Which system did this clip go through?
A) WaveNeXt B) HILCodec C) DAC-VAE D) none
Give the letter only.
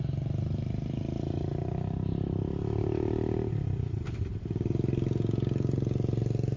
D